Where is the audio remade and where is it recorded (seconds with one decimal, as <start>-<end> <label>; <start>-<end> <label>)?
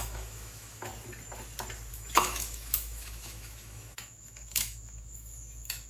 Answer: 0.0-0.9 remade; 0.9-1.9 recorded; 1.9-5.9 remade